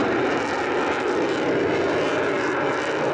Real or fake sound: real